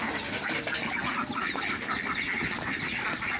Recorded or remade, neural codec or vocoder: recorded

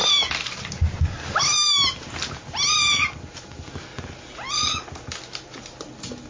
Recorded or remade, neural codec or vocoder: recorded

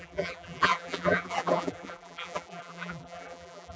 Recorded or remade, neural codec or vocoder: remade, vocoder, BigVGAN v2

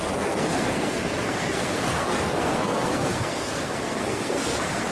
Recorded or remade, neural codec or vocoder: remade, codec, SNAC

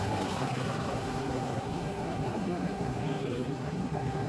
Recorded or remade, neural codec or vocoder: remade, codec, SNAC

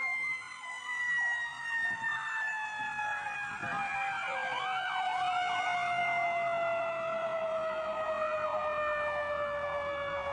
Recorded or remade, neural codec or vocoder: recorded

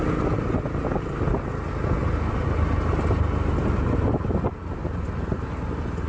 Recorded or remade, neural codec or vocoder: recorded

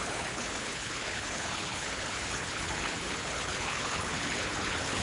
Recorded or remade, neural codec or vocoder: remade, codec, HILCodec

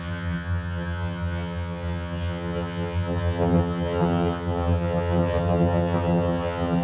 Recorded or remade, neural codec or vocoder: remade, vocoder, HiFi-GAN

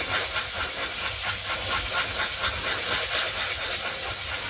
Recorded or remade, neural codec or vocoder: recorded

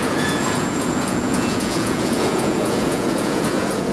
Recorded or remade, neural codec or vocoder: remade, vocoder, Vocos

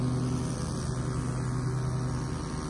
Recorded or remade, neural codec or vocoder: recorded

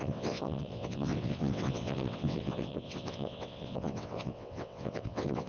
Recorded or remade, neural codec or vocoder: remade, vocoder, WaveNeXt